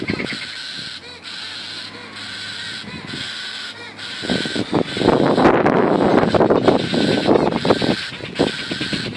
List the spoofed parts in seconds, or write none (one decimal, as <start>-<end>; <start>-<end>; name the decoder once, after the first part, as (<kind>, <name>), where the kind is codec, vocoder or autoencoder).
none